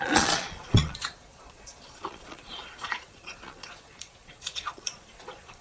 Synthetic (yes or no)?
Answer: yes